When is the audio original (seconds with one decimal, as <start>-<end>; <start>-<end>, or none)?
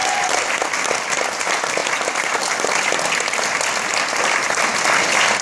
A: 0.0-5.4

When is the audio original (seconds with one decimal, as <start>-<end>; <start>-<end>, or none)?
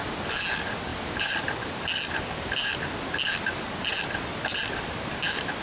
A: 0.0-5.6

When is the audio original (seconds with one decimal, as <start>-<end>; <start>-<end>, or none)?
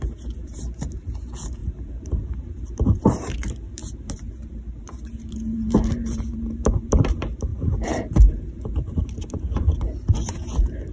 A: none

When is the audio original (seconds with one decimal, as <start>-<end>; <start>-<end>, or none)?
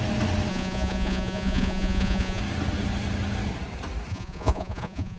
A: 0.0-0.5; 2.4-4.1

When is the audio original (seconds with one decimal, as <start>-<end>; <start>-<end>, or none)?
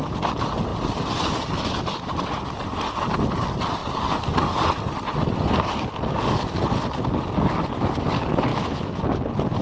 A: 0.0-8.5; 9.0-9.6